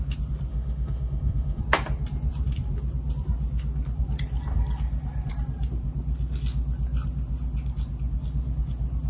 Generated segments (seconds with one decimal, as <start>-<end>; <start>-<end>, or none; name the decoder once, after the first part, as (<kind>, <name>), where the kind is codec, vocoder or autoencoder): 0.5-1.6 (autoencoder, DAC-VAE)